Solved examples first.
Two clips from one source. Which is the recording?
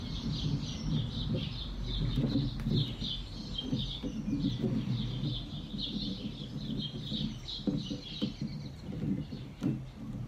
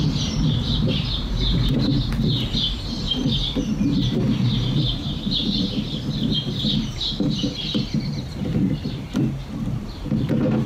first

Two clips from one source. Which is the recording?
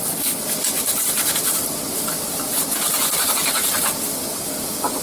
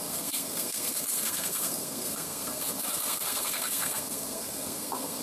first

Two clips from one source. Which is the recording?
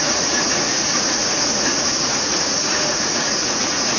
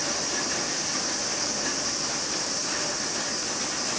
second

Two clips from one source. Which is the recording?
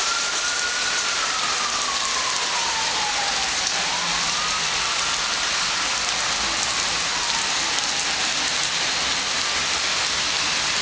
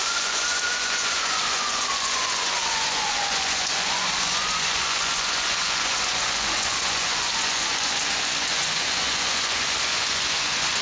first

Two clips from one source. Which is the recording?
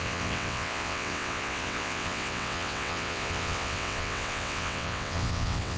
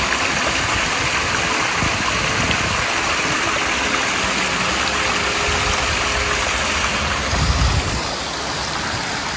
second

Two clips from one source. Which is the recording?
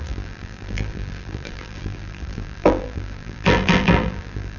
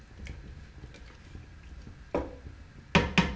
second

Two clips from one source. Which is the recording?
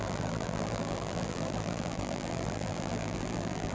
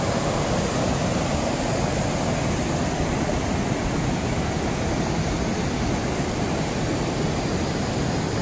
second